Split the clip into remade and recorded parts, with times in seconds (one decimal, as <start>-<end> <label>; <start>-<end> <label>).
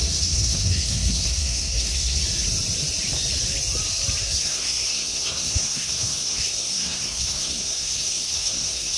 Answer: 0.0-2.2 remade; 2.2-4.2 recorded; 4.2-9.0 remade